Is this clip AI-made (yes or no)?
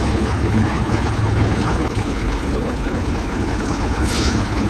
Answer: yes